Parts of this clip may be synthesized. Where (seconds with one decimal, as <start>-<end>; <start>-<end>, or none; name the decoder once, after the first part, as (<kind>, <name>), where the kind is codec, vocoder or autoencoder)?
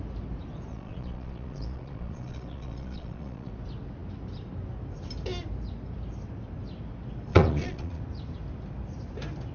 0.7-3.5 (vocoder, Vocos); 7.3-8.0